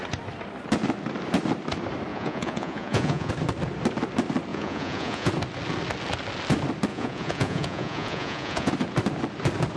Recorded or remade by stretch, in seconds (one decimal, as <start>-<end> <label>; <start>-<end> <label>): 0.0-2.1 recorded; 2.1-3.3 remade; 3.3-4.5 recorded; 4.5-5.3 remade; 5.3-6.9 recorded; 6.9-8.7 remade; 8.7-9.8 recorded